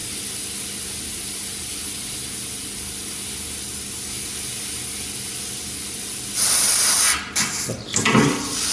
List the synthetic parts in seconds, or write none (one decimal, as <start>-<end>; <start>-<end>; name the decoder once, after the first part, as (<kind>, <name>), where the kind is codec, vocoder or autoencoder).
0.0-0.6 (vocoder, BigVGAN v2)